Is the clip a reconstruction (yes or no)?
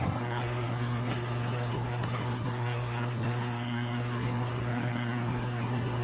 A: yes